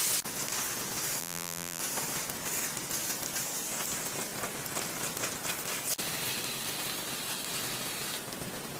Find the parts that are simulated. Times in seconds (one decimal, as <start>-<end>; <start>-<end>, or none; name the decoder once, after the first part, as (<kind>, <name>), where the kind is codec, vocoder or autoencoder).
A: 1.2-1.8 (vocoder, BigVGAN v2)